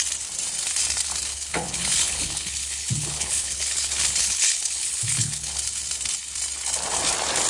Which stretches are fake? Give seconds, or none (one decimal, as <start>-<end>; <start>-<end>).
1.3-5.6